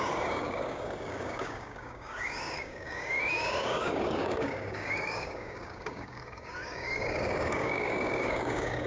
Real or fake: fake